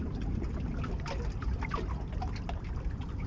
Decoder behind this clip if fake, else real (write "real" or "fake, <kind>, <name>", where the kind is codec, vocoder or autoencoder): real